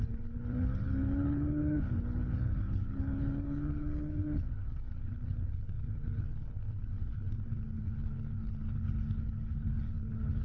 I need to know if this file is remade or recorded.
remade